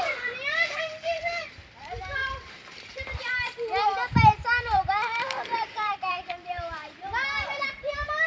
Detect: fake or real fake